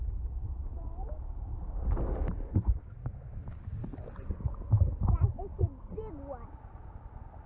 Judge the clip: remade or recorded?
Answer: recorded